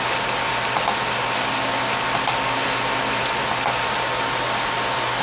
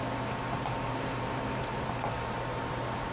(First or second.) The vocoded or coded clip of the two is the second